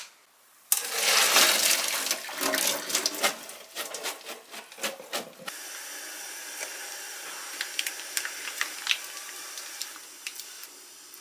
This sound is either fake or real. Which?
real